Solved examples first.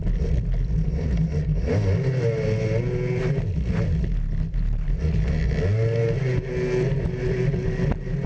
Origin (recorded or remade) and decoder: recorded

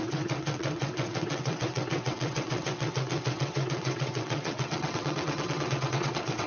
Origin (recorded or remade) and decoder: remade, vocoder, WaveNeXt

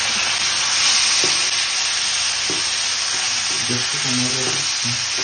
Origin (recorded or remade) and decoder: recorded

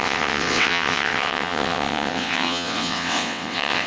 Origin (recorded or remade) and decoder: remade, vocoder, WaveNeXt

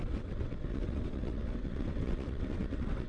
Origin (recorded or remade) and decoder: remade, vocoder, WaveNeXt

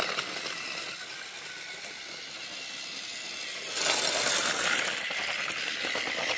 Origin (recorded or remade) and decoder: recorded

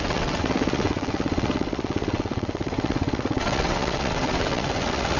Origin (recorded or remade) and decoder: remade, vocoder, WaveNeXt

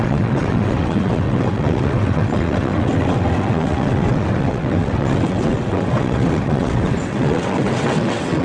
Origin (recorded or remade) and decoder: remade, vocoder, WaveNeXt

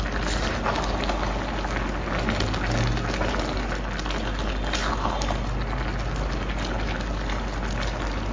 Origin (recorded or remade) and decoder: recorded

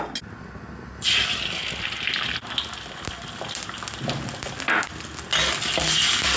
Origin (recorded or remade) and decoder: recorded